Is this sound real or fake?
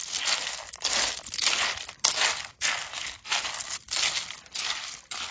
real